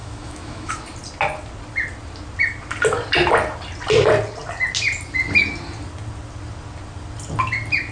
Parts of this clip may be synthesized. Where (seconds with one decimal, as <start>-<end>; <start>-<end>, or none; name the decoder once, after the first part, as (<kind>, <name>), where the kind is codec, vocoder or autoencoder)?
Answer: 0.0-0.7 (autoencoder, DAC-VAE)

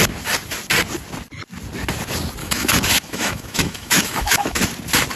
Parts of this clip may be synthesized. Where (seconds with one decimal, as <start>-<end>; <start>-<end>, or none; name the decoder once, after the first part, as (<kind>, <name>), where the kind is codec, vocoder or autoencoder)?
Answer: 2.4-4.6 (autoencoder, DAC-VAE)

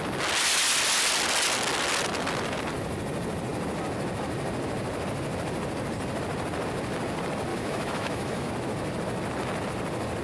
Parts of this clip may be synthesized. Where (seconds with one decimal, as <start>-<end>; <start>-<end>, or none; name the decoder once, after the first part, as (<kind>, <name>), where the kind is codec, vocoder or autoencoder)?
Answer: 7.5-8.5 (autoencoder, DAC-VAE)

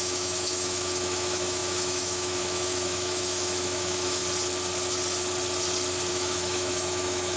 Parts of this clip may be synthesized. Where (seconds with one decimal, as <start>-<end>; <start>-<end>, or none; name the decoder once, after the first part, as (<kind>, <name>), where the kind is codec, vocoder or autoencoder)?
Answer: 0.0-4.2 (autoencoder, DAC-VAE); 6.1-7.4

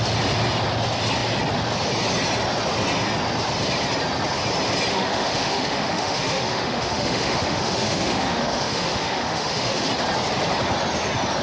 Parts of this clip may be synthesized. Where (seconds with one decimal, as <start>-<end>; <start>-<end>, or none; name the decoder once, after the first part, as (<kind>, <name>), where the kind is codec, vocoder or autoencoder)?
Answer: 4.9-9.9 (autoencoder, DAC-VAE)